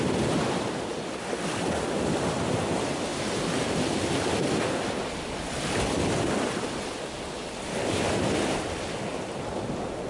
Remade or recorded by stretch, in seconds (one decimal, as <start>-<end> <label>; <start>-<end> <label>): 0.0-3.1 recorded; 3.1-3.7 remade; 3.7-10.1 recorded